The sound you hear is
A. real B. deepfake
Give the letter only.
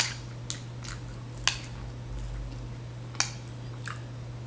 A